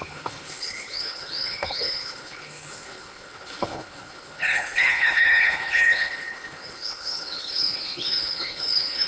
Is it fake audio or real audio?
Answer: fake